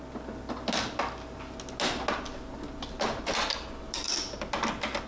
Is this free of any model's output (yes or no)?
yes